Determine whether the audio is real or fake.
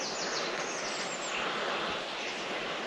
real